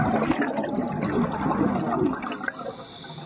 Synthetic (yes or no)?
no